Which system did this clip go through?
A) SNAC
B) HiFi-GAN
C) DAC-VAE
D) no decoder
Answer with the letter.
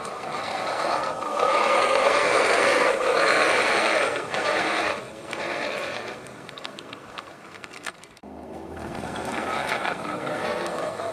A